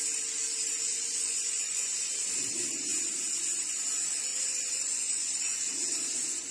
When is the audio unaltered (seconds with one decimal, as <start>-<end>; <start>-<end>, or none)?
0.0-0.9; 2.0-4.3; 5.7-6.5